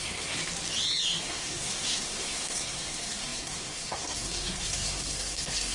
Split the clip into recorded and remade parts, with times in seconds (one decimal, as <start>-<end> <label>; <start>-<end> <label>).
0.0-0.4 remade; 0.4-1.2 recorded; 1.2-5.7 remade